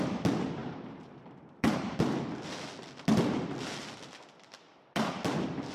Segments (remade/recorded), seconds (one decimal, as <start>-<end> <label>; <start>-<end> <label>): 0.0-0.6 recorded; 0.6-2.0 remade; 2.0-5.7 recorded